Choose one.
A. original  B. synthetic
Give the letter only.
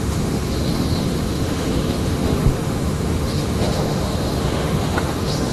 B